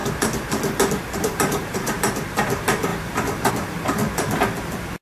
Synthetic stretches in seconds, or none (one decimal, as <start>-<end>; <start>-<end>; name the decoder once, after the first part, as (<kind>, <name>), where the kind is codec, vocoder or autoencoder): 1.2-4.0 (vocoder, BigVGAN v2); 4.6-5.0